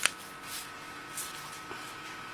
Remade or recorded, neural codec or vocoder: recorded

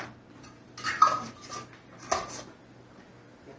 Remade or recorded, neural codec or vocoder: recorded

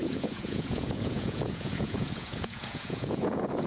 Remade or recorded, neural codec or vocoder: remade, vocoder, Vocos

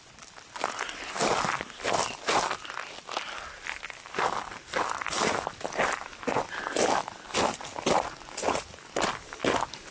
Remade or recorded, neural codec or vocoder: recorded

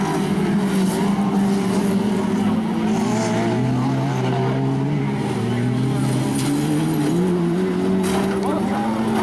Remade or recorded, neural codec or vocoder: recorded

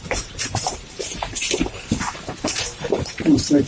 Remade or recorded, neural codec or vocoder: remade, vocoder, BigVGAN v2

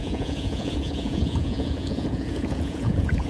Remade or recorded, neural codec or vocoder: remade, vocoder, Vocos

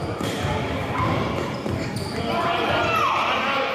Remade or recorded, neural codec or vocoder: recorded